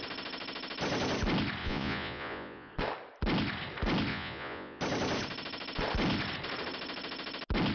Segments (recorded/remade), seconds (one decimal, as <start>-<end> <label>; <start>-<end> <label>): 0.0-1.6 recorded; 1.6-2.7 remade; 2.7-4.1 recorded; 4.1-4.8 remade; 4.8-7.7 recorded